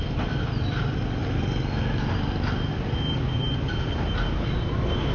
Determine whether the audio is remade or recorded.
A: recorded